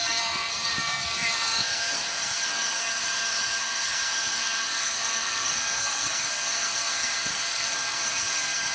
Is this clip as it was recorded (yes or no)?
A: no